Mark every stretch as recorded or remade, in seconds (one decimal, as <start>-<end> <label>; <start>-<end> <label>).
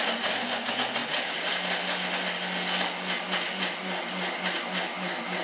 0.0-5.4 recorded